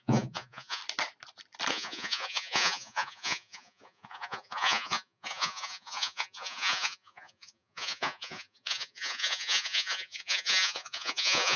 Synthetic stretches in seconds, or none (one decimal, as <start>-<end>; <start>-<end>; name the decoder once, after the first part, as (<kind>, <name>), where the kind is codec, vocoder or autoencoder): 0.0-0.8 (vocoder, Vocos); 1.7-11.6